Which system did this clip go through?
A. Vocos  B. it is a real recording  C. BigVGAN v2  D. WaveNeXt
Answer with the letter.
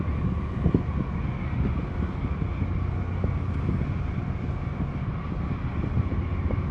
B